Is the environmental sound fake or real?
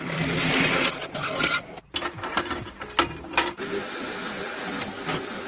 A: real